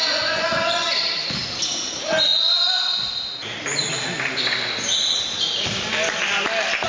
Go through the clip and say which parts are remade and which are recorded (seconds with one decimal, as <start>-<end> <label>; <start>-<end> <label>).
0.0-0.9 remade; 0.9-6.9 recorded